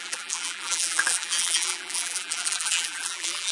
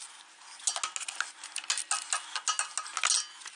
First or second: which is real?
second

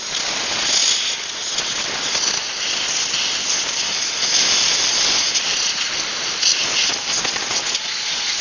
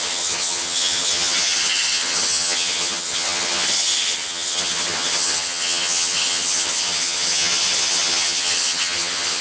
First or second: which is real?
first